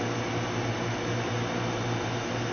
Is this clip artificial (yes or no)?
no